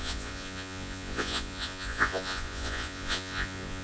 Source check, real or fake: fake